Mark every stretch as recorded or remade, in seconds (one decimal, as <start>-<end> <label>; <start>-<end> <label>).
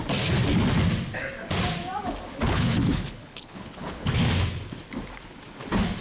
0.0-2.4 recorded; 2.4-4.1 remade; 4.1-6.0 recorded